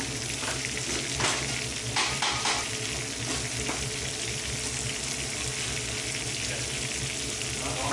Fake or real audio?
real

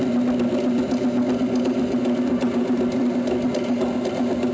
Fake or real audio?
real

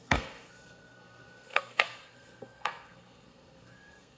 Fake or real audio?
fake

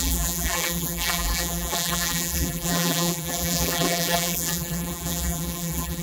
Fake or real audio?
fake